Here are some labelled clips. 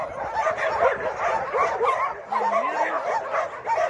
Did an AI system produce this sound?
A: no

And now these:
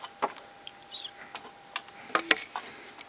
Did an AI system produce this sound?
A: no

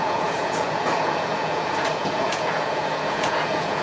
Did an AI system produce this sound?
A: yes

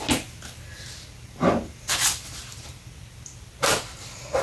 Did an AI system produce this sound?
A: no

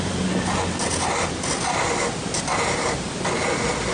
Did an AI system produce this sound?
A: no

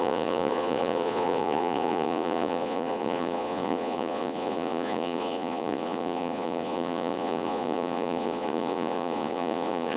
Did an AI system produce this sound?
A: yes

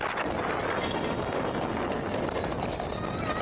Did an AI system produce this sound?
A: no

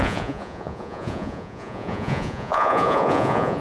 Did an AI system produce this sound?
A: yes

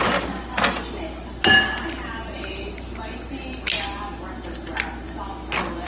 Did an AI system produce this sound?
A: no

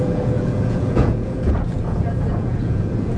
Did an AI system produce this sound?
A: yes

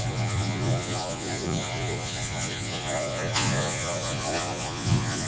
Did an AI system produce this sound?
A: yes